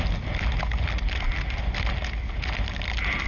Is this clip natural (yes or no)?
yes